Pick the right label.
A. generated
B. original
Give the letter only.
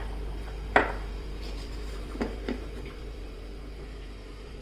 A